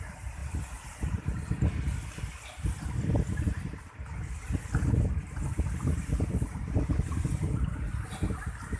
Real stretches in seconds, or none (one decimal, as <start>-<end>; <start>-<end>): 0.0-8.8